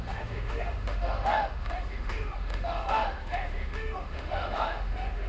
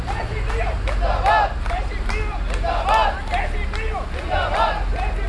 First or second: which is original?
second